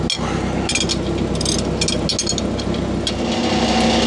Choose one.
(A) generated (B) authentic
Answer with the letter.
B